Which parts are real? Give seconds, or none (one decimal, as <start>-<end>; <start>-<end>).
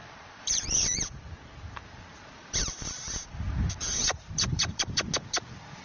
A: 3.4-4.0; 5.1-5.8